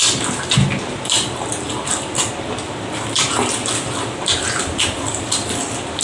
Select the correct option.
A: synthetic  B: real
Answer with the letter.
A